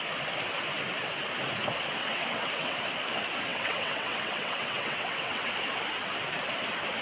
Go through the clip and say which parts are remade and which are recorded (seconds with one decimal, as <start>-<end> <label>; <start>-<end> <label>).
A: 0.0-2.0 recorded; 2.0-2.8 remade; 2.8-3.5 recorded; 3.5-5.5 remade; 5.5-7.0 recorded